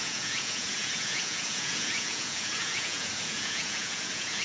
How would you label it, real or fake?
fake